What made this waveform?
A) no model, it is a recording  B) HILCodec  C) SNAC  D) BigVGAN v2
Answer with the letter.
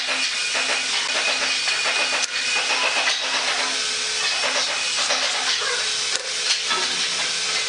A